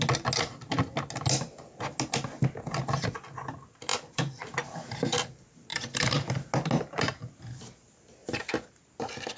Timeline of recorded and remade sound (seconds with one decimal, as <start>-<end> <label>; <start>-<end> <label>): 0.0-3.9 recorded; 3.9-4.4 remade; 4.4-5.7 recorded; 5.7-6.3 remade; 6.3-8.2 recorded; 8.2-9.0 remade; 9.0-9.4 recorded

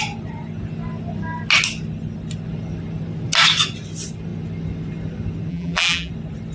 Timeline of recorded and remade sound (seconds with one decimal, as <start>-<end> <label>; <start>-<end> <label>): 0.0-5.5 recorded; 5.5-6.1 remade; 6.1-6.5 recorded

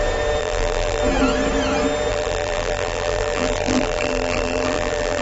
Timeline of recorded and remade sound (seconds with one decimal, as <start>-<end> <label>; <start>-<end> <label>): 0.0-0.4 recorded; 0.4-1.0 remade; 1.0-2.1 recorded; 2.1-5.2 remade

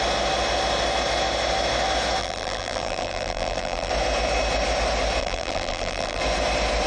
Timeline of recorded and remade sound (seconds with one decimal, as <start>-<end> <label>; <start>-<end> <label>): 0.0-2.2 recorded; 2.2-3.9 remade; 3.9-5.2 recorded; 5.2-6.2 remade; 6.2-6.9 recorded